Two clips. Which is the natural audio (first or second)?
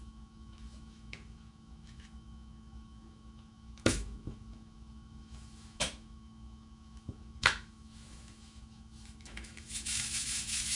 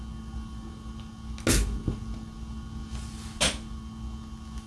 second